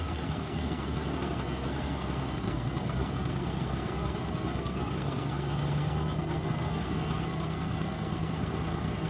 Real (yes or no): no